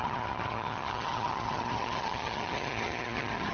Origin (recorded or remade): remade